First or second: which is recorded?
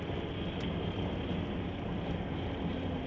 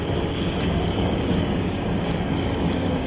first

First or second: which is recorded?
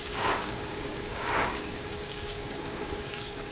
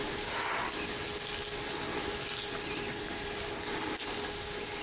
second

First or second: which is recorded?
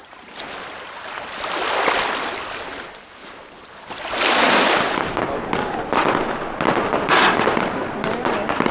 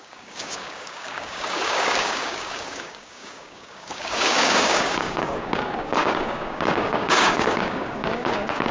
first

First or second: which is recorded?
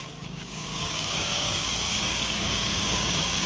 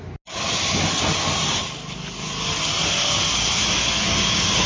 second